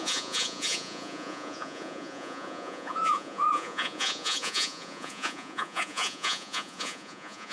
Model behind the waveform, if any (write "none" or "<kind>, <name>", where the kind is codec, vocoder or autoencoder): vocoder, Vocos